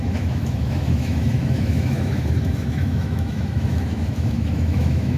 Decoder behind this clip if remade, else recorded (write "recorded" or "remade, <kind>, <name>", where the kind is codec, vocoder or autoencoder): remade, autoencoder, DAC-VAE